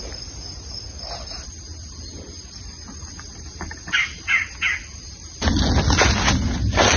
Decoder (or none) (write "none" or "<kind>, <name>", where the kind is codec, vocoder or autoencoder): none